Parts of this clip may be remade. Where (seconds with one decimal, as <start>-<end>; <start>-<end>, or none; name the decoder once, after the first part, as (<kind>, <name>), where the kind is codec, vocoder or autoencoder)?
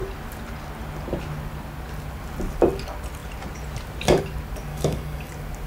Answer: 4.7-5.3 (codec, DAC)